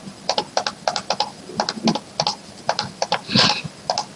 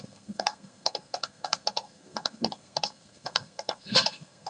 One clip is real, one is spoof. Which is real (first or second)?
first